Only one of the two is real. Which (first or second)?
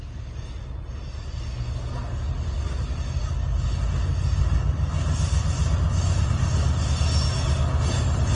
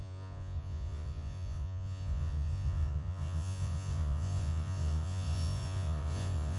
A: first